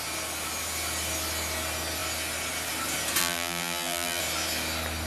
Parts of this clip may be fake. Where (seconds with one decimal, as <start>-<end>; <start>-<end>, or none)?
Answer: 3.2-4.2

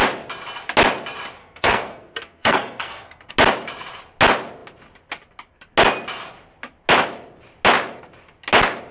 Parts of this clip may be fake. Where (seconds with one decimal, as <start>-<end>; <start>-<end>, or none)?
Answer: 1.4-3.3